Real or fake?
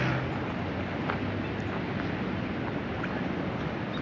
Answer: real